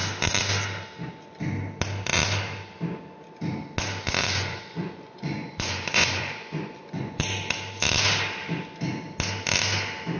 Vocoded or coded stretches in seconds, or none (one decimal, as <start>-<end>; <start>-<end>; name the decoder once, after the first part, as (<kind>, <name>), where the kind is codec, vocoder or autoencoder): 4.2-7.2 (vocoder, Vocos)